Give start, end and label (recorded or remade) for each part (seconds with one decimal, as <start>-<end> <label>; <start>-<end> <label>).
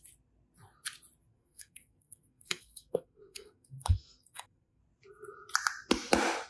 0.0-1.3 recorded; 1.3-4.8 remade; 4.8-6.5 recorded